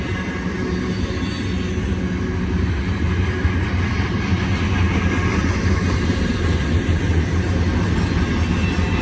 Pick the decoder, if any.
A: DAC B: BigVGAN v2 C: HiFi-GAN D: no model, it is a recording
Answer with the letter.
D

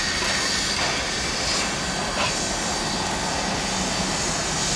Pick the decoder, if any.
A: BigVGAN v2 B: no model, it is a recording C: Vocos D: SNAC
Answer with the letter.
B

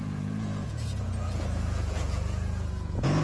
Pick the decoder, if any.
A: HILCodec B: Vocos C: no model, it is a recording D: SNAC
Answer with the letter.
B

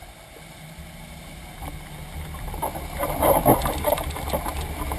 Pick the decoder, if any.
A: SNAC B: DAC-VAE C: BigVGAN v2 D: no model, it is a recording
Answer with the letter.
D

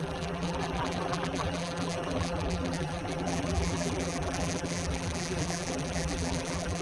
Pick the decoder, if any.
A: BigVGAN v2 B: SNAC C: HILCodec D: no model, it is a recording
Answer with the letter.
A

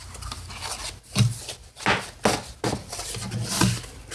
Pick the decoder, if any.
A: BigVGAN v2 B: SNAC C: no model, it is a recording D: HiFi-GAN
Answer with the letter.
C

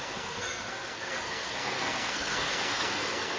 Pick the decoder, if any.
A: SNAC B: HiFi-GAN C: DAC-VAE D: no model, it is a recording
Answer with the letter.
A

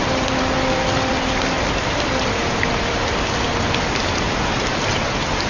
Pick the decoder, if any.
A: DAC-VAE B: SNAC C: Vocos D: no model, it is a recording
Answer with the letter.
D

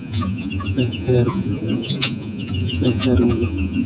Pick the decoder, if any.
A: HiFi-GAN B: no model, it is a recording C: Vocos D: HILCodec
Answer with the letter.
C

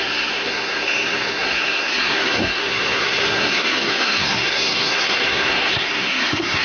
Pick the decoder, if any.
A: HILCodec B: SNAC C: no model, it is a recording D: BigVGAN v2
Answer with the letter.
B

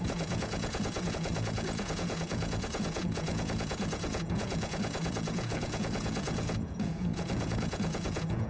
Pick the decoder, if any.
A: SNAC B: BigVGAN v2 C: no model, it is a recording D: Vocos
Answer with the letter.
D